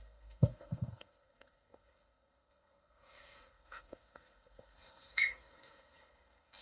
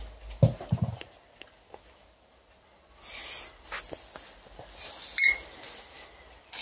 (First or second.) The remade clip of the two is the first